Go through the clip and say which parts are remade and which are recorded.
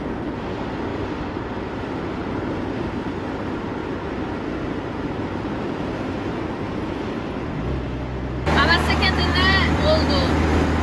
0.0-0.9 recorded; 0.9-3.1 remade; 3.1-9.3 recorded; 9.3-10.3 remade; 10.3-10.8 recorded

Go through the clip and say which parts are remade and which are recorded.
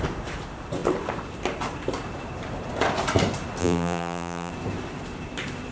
0.0-3.6 recorded; 3.6-4.5 remade; 4.5-5.7 recorded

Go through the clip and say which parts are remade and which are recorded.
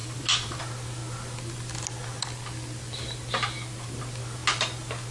0.0-0.6 remade; 0.6-5.1 recorded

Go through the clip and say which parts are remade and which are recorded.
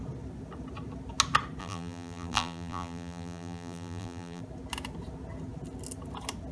0.0-1.6 recorded; 1.6-4.4 remade; 4.4-6.5 recorded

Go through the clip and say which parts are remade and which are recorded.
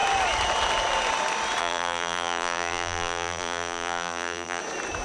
0.0-1.6 recorded; 1.6-4.6 remade; 4.6-5.0 recorded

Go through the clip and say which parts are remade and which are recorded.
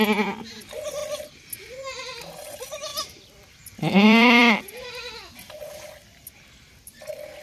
0.0-2.9 recorded; 2.9-5.7 remade; 5.7-7.4 recorded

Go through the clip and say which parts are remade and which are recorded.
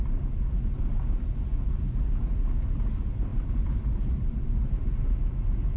0.0-1.5 recorded; 1.5-2.0 remade; 2.0-3.3 recorded; 3.3-5.8 remade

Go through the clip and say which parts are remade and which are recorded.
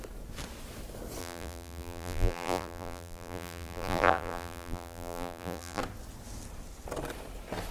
0.0-1.2 recorded; 1.2-5.8 remade; 5.8-7.7 recorded